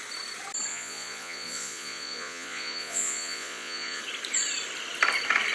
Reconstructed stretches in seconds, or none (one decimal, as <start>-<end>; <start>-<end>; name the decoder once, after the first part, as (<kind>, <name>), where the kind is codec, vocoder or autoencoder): 0.7-4.0 (vocoder, Vocos)